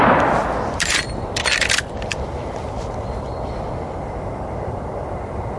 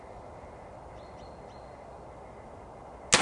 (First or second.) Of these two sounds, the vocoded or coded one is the first